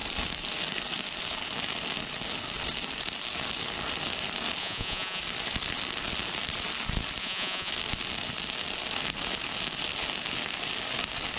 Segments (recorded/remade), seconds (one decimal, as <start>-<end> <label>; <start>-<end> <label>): 0.0-4.6 recorded; 4.6-5.2 remade; 5.2-7.2 recorded; 7.2-7.7 remade; 7.7-11.4 recorded